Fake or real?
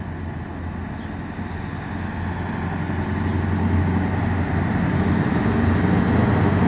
real